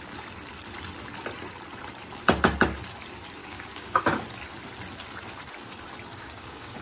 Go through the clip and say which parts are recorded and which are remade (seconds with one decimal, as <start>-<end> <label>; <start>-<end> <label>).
0.0-3.4 recorded; 3.4-4.0 remade; 4.0-6.1 recorded; 6.1-6.8 remade

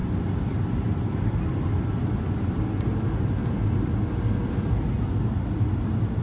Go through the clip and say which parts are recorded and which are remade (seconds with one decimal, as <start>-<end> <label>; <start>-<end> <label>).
0.0-6.2 recorded

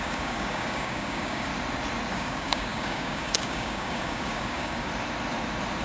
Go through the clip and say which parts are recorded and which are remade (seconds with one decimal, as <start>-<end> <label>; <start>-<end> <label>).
0.0-1.5 remade; 1.5-2.1 recorded; 2.1-4.9 remade; 4.9-5.8 recorded

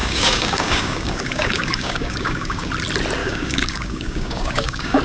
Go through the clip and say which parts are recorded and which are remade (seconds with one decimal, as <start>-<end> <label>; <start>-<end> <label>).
0.0-2.7 remade; 2.7-3.2 recorded; 3.2-5.0 remade